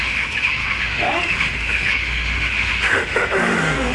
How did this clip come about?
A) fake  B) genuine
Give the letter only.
A